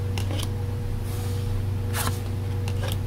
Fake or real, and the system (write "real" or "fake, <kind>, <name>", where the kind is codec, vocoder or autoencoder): real